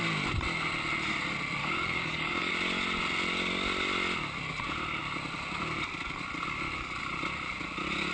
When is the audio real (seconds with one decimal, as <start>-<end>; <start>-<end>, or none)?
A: 0.0-1.6; 2.5-8.1